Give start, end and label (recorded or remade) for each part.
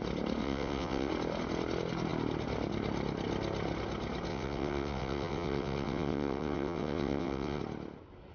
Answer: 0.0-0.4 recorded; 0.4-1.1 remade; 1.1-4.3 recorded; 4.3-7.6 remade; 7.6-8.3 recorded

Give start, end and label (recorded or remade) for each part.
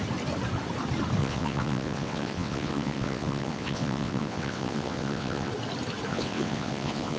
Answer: 0.0-1.2 recorded; 1.2-5.5 remade; 5.5-6.1 recorded; 6.1-7.2 remade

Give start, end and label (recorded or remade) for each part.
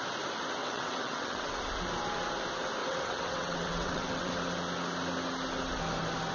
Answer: 0.0-0.6 recorded; 0.6-1.5 remade; 1.5-2.8 recorded; 2.8-4.3 remade; 4.3-6.3 recorded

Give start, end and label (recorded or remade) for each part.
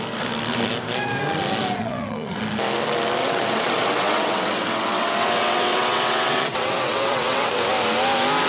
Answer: 0.0-1.8 recorded; 1.8-2.4 remade; 2.4-3.2 recorded; 3.2-7.7 remade; 7.7-8.5 recorded